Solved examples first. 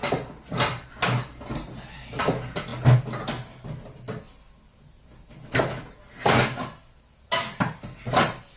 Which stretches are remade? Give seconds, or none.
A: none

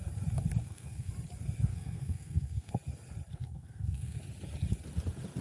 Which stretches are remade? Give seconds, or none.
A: 0.6-1.1; 1.7-2.7; 3.3-4.2

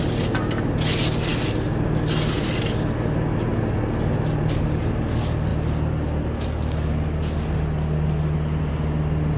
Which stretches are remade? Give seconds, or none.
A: none